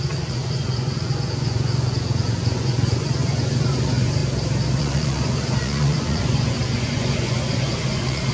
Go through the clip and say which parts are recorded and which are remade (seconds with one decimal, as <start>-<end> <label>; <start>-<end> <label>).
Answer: 0.0-4.2 remade; 4.2-4.8 recorded; 4.8-8.3 remade